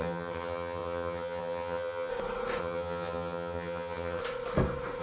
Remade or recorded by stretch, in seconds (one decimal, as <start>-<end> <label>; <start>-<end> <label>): 0.0-2.1 remade; 2.1-2.6 recorded; 2.6-4.2 remade; 4.2-5.0 recorded